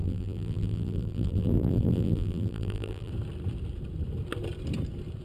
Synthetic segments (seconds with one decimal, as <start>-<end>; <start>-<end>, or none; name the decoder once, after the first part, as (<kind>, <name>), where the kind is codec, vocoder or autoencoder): 0.0-3.1 (vocoder, BigVGAN v2)